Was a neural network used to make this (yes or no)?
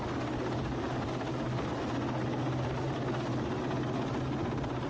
no